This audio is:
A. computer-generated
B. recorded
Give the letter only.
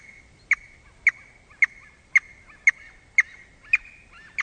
B